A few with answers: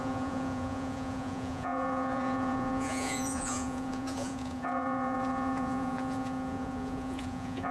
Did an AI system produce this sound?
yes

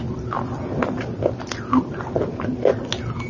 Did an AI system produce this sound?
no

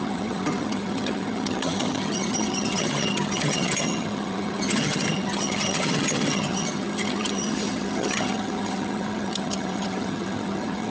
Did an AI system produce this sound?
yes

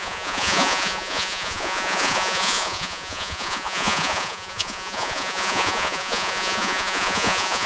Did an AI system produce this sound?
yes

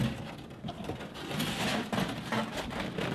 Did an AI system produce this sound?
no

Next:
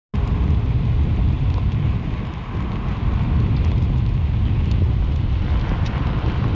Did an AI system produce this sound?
no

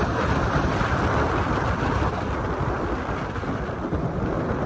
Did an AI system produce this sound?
yes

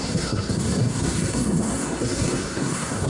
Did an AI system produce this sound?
yes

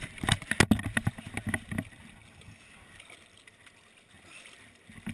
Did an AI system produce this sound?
no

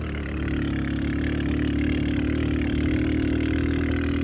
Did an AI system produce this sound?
no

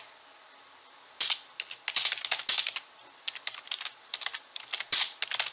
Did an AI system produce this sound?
no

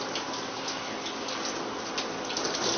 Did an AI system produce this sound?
no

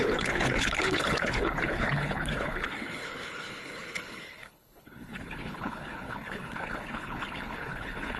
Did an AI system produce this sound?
yes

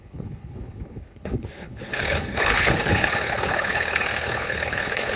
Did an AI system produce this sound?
yes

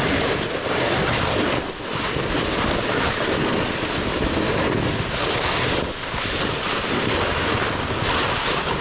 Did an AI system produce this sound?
no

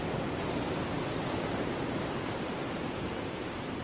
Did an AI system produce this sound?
yes